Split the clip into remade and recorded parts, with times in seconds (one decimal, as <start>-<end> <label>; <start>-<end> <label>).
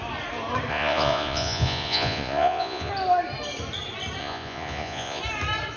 0.0-0.7 recorded; 0.7-2.9 remade; 2.9-4.2 recorded; 4.2-5.2 remade; 5.2-5.8 recorded